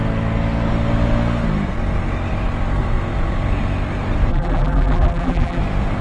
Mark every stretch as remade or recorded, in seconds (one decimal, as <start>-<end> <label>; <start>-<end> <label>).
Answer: 0.0-4.3 recorded; 4.3-5.6 remade; 5.6-6.0 recorded